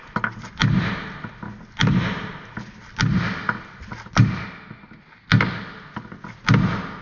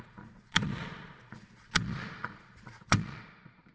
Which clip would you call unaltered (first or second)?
first